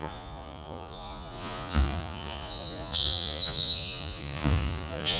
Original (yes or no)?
no